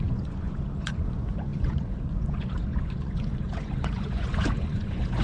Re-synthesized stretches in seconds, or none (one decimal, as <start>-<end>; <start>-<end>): 0.0-5.2